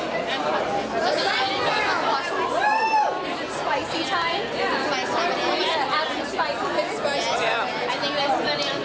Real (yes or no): yes